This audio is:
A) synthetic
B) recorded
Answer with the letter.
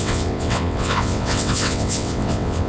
A